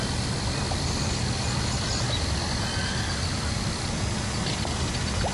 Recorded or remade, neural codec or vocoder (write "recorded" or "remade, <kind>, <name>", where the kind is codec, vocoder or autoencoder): recorded